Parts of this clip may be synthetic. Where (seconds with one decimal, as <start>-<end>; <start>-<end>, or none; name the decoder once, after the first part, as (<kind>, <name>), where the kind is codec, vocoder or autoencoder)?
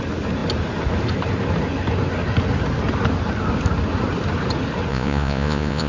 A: 4.9-5.9 (vocoder, Vocos)